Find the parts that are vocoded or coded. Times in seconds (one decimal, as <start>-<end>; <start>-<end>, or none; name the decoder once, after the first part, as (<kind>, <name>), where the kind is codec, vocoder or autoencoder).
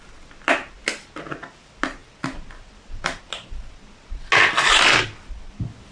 none